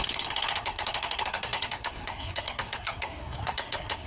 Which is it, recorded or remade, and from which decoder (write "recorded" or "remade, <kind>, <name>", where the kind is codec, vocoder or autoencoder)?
remade, codec, SNAC